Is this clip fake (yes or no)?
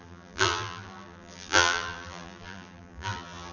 yes